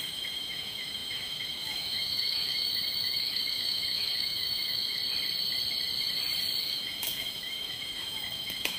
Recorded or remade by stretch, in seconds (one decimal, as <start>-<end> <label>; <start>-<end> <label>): 0.0-5.0 remade; 5.0-6.6 recorded; 6.6-8.8 remade